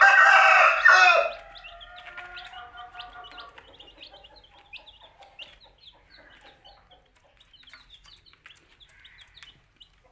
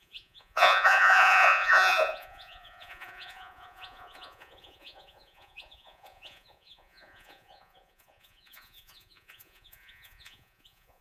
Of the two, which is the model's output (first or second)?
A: second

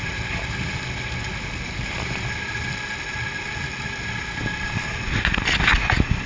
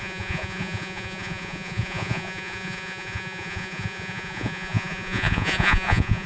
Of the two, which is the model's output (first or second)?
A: second